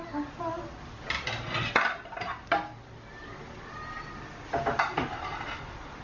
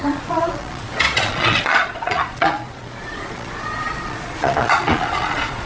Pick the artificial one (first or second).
second